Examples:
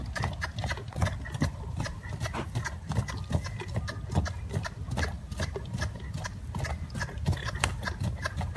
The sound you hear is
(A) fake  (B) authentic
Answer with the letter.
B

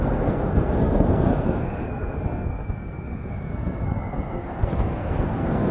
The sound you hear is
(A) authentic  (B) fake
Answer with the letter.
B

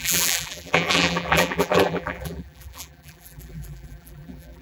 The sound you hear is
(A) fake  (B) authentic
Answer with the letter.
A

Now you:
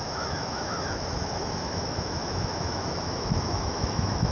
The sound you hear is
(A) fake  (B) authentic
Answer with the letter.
A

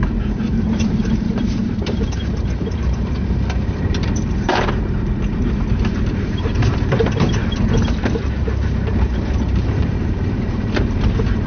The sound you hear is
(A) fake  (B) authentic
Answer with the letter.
A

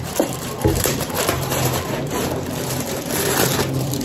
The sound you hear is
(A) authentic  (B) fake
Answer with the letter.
B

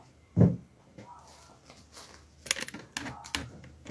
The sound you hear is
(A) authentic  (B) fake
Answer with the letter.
A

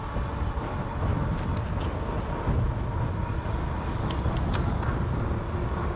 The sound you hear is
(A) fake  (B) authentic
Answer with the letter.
B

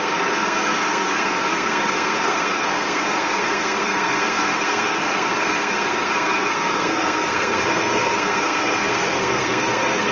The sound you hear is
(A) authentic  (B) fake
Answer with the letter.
B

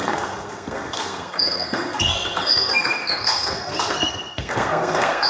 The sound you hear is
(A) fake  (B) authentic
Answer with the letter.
A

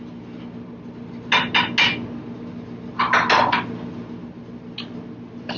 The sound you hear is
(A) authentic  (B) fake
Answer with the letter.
A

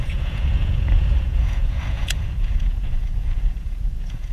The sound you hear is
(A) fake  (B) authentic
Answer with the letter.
A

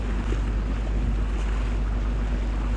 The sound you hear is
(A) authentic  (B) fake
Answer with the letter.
A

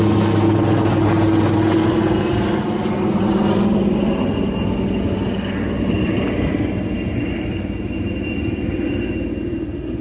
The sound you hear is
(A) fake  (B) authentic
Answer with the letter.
B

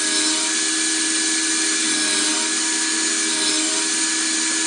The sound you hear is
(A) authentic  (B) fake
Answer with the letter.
A